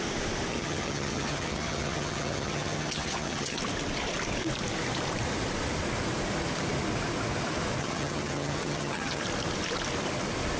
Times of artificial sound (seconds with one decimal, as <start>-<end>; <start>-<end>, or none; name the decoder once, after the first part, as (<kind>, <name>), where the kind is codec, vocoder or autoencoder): 0.5-3.6 (vocoder, HiFi-GAN); 7.8-9.2